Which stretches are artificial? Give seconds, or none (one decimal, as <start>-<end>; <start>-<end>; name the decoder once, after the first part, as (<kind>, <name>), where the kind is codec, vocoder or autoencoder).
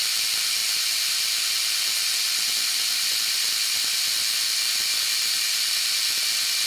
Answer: none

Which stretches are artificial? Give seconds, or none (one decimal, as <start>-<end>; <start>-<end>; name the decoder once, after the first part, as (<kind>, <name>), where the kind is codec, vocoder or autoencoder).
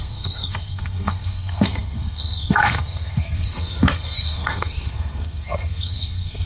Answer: 0.0-6.5 (codec, SNAC)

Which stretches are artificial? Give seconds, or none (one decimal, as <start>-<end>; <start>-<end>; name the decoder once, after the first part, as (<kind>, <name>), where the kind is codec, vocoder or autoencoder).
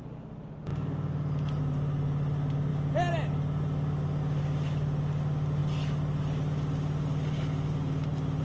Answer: none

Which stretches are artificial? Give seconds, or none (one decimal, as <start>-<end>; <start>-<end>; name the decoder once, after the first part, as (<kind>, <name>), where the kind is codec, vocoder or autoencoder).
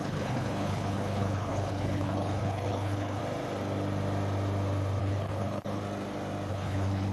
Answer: 0.0-3.2 (codec, HILCodec); 5.0-5.8; 6.5-7.1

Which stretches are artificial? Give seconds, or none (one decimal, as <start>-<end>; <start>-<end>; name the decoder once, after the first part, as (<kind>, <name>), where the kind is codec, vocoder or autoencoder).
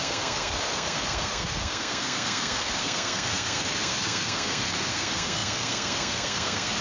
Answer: 0.0-6.8 (codec, SNAC)